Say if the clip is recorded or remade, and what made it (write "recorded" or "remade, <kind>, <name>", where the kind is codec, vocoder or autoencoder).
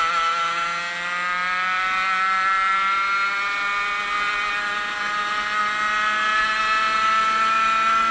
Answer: recorded